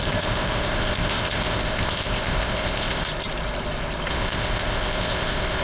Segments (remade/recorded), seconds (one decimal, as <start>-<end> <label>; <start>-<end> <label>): 0.0-3.1 remade; 3.1-4.1 recorded; 4.1-5.6 remade